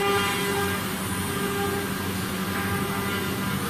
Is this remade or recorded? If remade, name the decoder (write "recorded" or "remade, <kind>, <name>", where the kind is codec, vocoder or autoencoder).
recorded